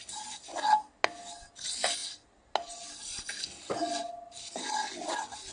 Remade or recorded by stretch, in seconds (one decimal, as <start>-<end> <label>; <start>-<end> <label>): 0.0-5.5 recorded